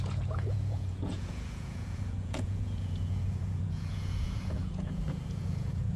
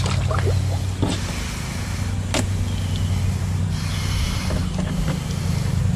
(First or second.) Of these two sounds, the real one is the second